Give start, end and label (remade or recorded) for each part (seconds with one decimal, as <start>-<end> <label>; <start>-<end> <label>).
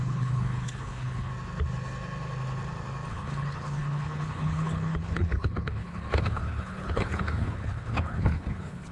0.0-1.3 remade; 1.3-3.1 recorded; 3.1-8.9 remade